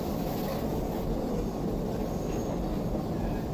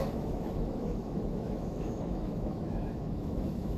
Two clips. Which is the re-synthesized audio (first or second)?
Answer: second